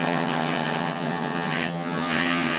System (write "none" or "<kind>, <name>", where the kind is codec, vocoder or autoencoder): vocoder, HiFi-GAN